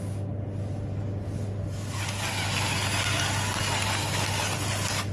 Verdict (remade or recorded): recorded